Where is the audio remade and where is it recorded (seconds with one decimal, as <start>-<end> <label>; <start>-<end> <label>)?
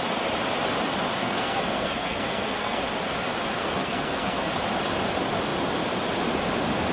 0.0-1.2 recorded; 1.2-2.8 remade; 2.8-3.6 recorded; 3.6-4.5 remade; 4.5-6.9 recorded